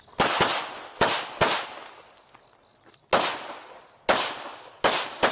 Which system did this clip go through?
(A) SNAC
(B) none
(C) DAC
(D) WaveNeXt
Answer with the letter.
B